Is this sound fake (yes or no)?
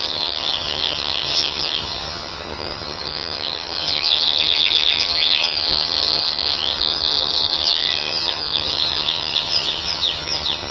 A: yes